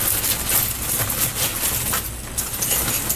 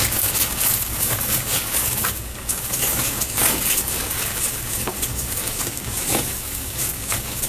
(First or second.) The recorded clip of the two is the first